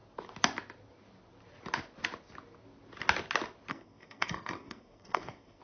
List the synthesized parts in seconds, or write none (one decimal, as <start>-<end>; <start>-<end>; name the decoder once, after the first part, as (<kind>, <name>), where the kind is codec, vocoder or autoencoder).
3.7-5.6 (codec, SNAC)